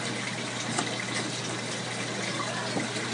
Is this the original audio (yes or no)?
yes